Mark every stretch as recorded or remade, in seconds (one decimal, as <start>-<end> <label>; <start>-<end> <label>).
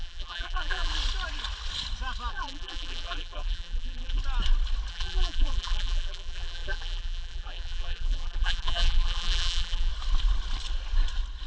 0.0-0.9 remade; 0.9-2.3 recorded; 2.3-4.2 remade; 4.2-4.9 recorded; 4.9-9.9 remade; 9.9-11.5 recorded